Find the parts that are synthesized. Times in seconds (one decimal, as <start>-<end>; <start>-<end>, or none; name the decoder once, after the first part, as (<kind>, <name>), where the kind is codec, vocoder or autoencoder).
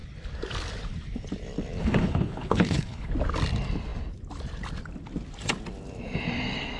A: 1.8-3.1 (codec, HILCodec)